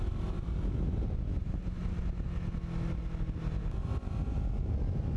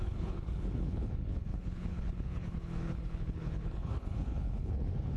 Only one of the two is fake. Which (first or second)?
second